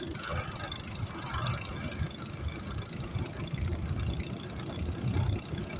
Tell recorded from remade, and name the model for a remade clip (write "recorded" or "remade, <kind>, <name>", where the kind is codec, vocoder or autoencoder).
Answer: recorded